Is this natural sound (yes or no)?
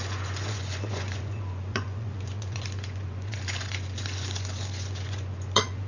no